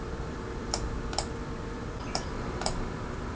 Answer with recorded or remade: remade